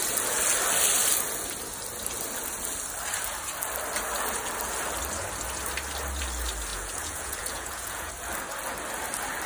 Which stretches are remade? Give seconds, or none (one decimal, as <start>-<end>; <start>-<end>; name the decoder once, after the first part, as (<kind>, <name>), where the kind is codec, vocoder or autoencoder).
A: 6.7-8.1 (vocoder, Vocos)